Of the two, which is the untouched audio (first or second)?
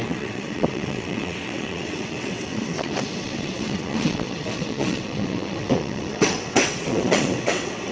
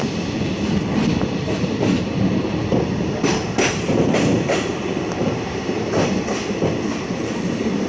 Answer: second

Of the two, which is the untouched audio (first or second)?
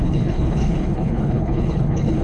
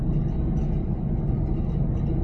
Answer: second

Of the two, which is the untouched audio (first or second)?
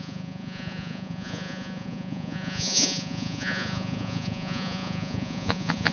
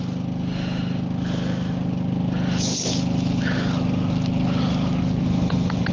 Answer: second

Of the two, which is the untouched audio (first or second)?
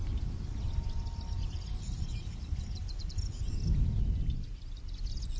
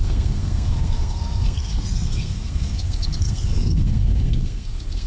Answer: first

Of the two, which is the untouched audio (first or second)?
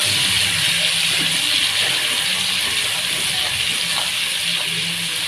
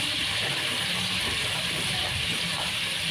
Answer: first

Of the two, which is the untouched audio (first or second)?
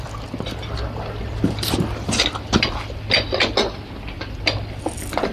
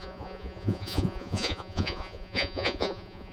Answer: first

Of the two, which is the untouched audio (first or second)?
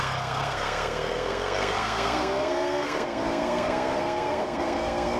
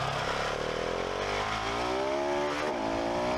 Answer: second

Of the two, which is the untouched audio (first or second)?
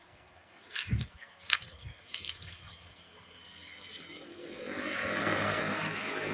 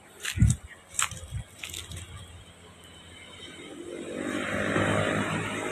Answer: second